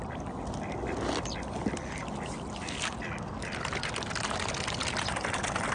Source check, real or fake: real